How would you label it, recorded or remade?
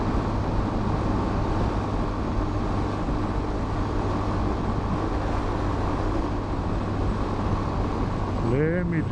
recorded